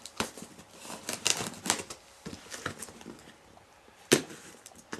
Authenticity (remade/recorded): remade